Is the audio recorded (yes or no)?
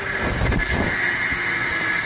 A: yes